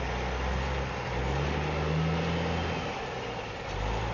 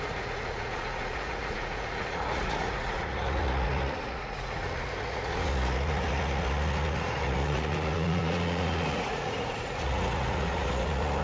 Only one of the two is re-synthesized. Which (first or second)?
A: second